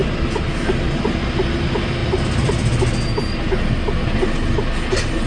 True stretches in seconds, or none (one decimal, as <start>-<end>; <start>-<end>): 0.0-5.3